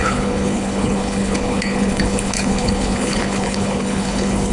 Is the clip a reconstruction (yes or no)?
yes